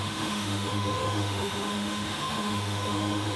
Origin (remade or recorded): remade